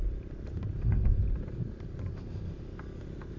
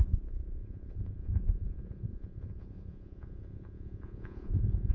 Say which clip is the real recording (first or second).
first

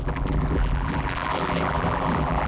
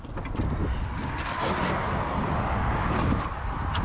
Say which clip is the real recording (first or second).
second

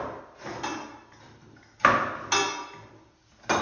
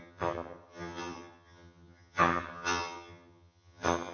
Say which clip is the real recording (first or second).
first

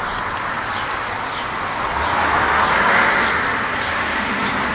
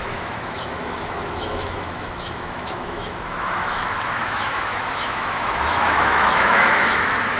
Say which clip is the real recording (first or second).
first